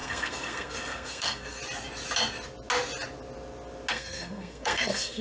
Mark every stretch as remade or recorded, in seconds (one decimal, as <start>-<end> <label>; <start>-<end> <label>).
0.0-1.6 remade; 1.6-3.9 recorded; 3.9-5.2 remade